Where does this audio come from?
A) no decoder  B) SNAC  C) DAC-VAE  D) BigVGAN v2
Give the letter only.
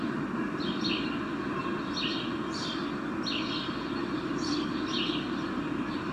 A